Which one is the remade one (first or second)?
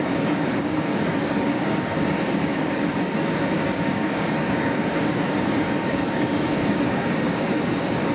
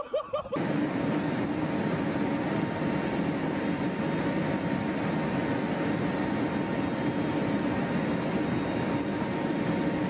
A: first